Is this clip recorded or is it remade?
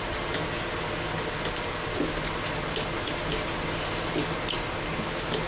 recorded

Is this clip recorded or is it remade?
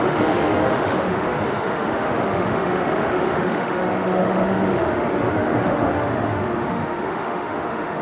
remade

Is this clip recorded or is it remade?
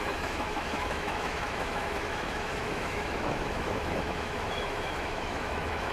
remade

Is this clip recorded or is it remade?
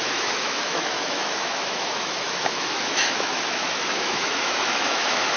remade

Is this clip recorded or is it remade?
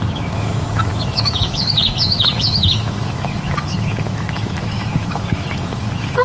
remade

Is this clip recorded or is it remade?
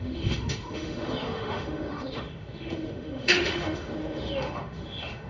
remade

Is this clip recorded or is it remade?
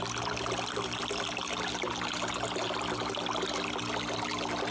recorded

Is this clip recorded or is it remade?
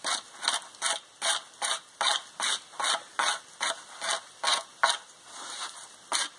recorded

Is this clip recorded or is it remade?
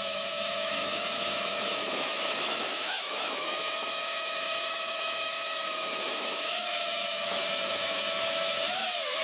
remade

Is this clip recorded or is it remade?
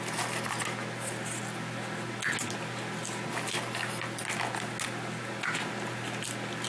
recorded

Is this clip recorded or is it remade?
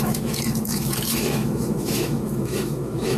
remade